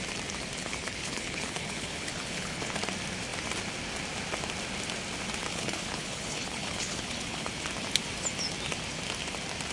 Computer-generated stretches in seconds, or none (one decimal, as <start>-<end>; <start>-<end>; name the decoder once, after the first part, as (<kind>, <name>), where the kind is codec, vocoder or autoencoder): 0.6-2.8 (codec, HILCodec); 5.5-7.5